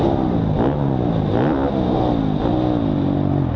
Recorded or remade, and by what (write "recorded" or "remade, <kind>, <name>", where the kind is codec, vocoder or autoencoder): recorded